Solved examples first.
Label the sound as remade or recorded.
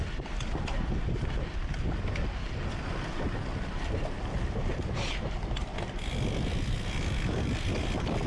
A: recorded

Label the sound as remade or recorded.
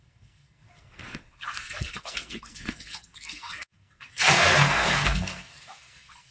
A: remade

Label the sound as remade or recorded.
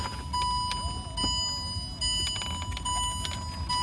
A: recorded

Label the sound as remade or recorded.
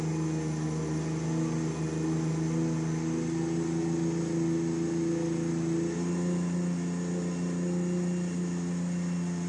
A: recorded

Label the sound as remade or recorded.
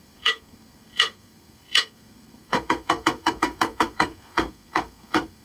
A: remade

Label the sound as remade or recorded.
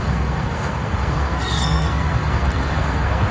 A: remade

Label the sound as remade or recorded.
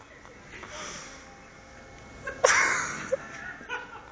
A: recorded